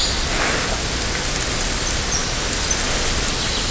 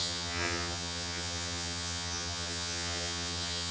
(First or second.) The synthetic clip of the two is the second